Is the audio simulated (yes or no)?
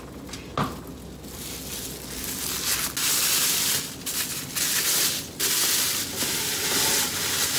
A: no